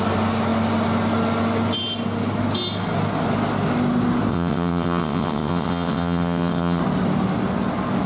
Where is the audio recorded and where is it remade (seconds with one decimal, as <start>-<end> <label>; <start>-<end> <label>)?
0.0-4.3 recorded; 4.3-6.8 remade; 6.8-8.1 recorded